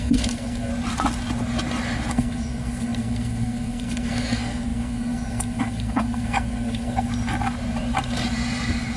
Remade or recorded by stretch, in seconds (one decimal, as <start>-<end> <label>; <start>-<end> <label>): 0.0-0.7 remade; 0.7-2.1 recorded; 2.1-7.1 remade; 7.1-9.0 recorded